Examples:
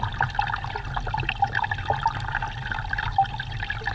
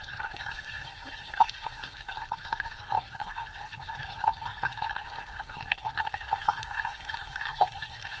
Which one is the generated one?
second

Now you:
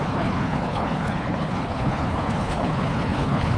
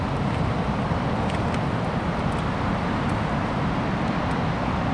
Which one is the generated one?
first